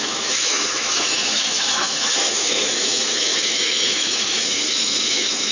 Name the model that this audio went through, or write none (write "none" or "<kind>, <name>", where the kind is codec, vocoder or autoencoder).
autoencoder, DAC-VAE